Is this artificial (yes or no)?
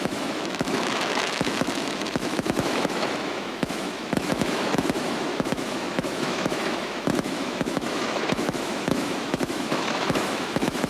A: yes